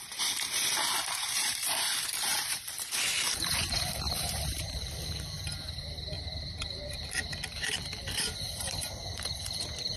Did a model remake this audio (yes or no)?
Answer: yes